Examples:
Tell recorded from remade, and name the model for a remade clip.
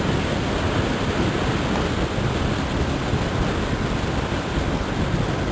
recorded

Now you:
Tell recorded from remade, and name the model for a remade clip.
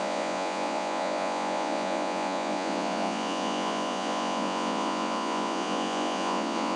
remade, vocoder, Vocos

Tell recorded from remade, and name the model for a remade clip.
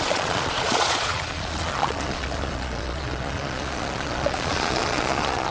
remade, vocoder, Vocos